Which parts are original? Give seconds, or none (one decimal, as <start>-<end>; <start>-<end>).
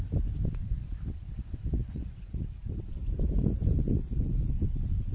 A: 0.0-1.8; 2.4-5.1